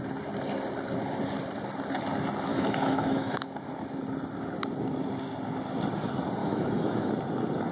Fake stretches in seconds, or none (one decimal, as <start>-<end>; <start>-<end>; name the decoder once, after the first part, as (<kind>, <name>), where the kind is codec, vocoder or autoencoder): 2.5-3.7 (autoencoder, DAC-VAE); 6.4-7.1